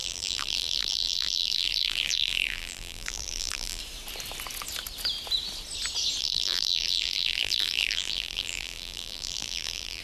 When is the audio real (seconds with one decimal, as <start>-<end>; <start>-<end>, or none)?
3.8-6.2